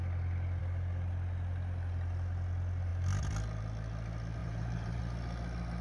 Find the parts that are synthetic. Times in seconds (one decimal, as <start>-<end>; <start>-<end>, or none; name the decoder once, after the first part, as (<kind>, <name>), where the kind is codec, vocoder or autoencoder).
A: 4.4-5.0 (vocoder, BigVGAN v2)